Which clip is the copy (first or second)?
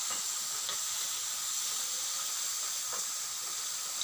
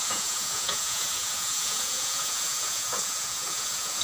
second